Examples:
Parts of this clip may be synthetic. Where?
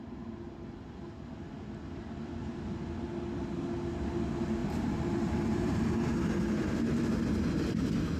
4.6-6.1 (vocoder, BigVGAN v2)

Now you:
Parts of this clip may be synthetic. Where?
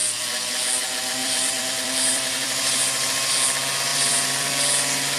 0.0-0.6 (vocoder, BigVGAN v2); 1.2-3.3; 3.9-4.5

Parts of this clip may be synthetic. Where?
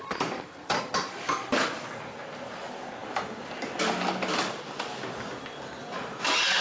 none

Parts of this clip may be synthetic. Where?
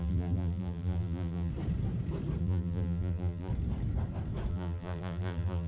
0.0-1.5 (vocoder, BigVGAN v2); 2.4-3.5; 4.5-5.7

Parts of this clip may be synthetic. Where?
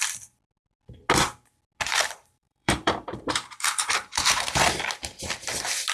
1.9-4.6 (vocoder, BigVGAN v2)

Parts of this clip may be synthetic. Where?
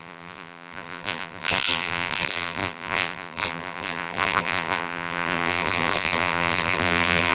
0.0-7.3 (vocoder, BigVGAN v2)